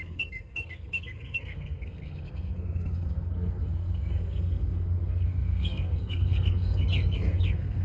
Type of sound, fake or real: fake